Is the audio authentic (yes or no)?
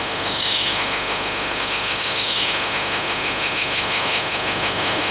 no